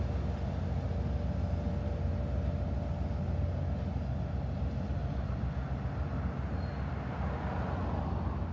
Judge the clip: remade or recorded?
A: recorded